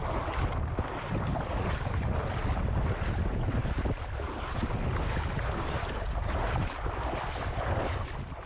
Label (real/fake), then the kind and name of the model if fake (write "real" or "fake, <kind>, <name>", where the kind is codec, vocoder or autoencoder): real